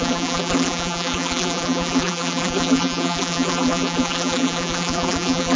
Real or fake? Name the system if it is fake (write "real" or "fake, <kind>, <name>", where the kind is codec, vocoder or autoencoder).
fake, vocoder, BigVGAN v2